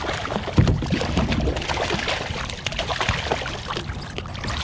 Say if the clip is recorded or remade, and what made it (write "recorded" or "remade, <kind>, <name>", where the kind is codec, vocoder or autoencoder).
recorded